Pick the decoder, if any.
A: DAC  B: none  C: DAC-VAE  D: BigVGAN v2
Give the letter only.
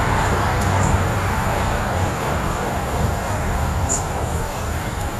A